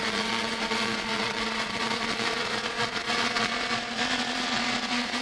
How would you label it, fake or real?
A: fake